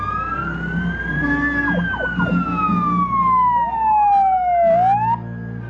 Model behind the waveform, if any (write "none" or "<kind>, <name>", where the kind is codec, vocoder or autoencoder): none